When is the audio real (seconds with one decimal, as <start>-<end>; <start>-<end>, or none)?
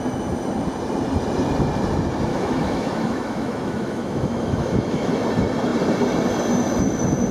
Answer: 0.0-2.3; 5.1-7.3